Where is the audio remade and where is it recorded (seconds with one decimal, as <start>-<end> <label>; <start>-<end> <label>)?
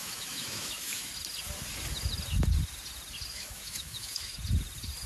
0.0-1.1 remade; 1.1-3.3 recorded; 3.3-4.4 remade; 4.4-5.1 recorded